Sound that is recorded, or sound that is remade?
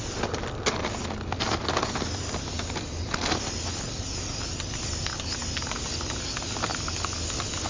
recorded